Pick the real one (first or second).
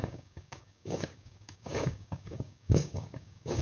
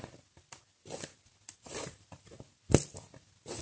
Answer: second